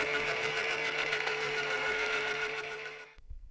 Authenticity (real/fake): fake